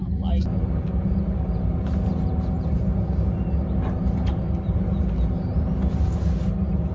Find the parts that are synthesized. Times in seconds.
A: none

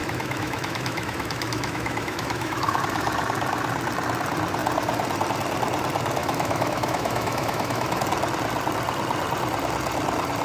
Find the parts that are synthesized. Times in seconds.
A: 0.0-2.8 (autoencoder, DAC-VAE); 6.2-8.0

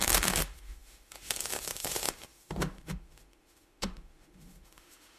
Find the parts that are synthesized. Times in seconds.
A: 0.0-5.2 (autoencoder, DAC-VAE)

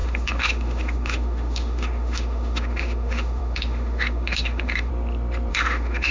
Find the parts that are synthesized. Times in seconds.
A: 0.0-4.9 (autoencoder, DAC-VAE); 5.5-6.1

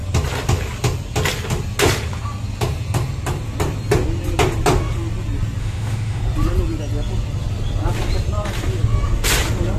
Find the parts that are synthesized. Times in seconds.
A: 5.6-6.2 (autoencoder, DAC-VAE)